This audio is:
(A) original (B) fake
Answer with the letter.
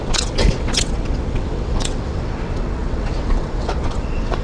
B